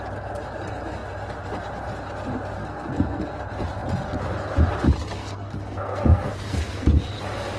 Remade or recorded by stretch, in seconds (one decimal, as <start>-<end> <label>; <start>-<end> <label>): 0.0-2.6 recorded; 2.6-3.4 remade; 3.4-5.2 recorded; 5.2-7.0 remade; 7.0-7.6 recorded